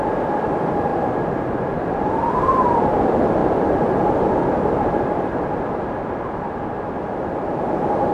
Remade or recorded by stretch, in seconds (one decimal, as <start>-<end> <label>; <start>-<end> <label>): 0.0-0.9 remade; 0.9-1.5 recorded; 1.5-8.1 remade